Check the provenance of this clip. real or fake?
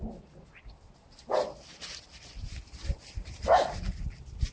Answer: real